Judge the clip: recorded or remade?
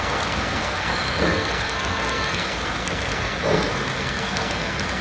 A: remade